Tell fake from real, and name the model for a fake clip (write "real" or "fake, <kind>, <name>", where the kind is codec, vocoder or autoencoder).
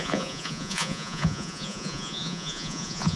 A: fake, vocoder, Vocos